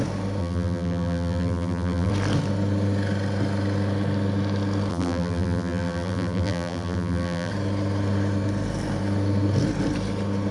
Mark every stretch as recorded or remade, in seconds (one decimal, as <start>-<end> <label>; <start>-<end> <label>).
0.0-0.4 recorded; 0.4-2.1 remade; 2.1-4.9 recorded; 4.9-7.5 remade; 7.5-10.5 recorded